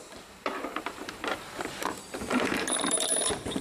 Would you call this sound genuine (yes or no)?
no